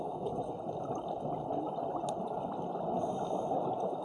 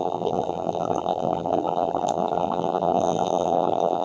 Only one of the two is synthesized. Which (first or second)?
second